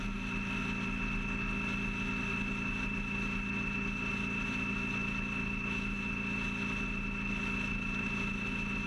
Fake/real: real